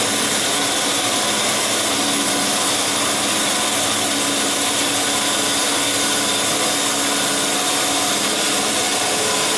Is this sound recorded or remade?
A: recorded